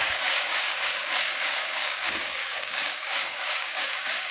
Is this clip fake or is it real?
fake